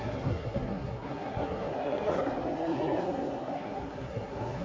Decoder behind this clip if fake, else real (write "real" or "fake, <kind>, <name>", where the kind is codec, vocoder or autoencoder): fake, codec, SNAC